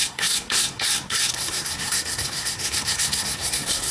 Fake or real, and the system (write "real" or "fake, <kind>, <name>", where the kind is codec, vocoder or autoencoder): fake, codec, SNAC